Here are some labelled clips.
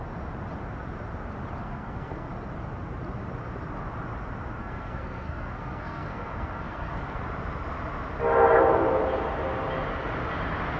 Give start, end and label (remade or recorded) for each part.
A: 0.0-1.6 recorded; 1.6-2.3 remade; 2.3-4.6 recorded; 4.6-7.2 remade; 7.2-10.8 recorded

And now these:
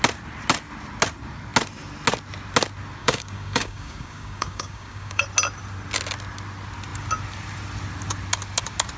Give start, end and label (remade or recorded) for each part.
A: 0.0-3.0 recorded; 3.0-5.2 remade; 5.2-9.0 recorded